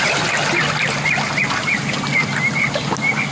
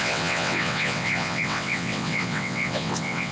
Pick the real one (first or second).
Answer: first